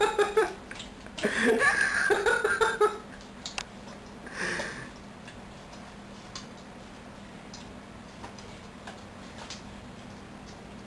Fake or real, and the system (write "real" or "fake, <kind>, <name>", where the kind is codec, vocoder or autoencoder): fake, vocoder, BigVGAN v2